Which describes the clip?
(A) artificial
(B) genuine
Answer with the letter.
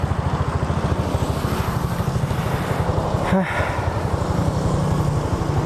B